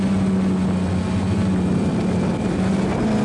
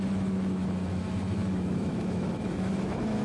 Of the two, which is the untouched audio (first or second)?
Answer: first